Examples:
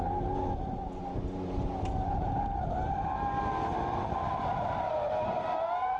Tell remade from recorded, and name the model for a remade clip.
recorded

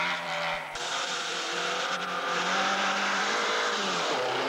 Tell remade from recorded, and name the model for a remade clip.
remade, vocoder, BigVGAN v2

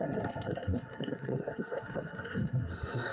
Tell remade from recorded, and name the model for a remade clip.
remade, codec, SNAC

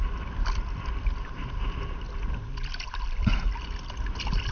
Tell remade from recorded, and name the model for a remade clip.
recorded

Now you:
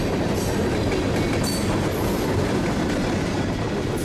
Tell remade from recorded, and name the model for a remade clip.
recorded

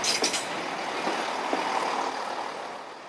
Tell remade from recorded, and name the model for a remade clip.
recorded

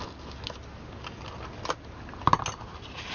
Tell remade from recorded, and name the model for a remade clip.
recorded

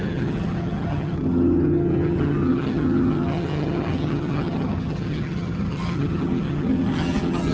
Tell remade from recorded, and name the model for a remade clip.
remade, vocoder, HiFi-GAN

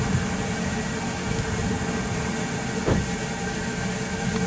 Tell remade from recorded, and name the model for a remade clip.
recorded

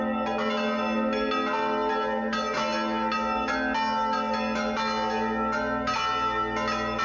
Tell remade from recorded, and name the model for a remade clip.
recorded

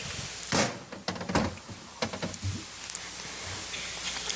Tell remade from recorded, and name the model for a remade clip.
recorded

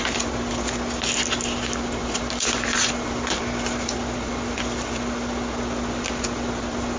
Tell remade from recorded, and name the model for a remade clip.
recorded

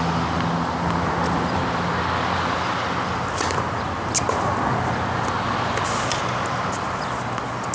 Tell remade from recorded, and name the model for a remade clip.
recorded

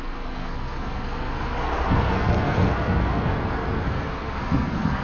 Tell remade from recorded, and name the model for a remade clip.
remade, codec, SNAC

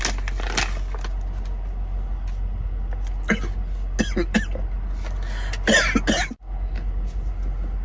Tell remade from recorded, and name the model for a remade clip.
recorded